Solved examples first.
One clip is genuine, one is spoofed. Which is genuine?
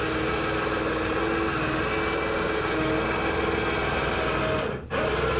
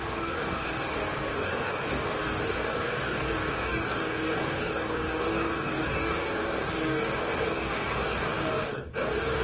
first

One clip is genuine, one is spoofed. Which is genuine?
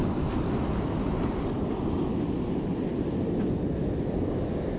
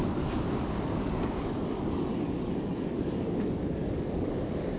first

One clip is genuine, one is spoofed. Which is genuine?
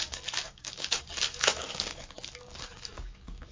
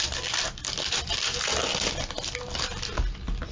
second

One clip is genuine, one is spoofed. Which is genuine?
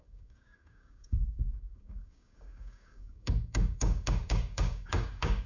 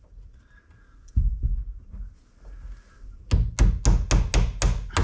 second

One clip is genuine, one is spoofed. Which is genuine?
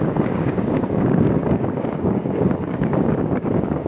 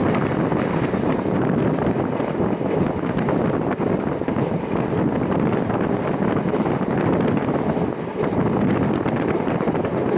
second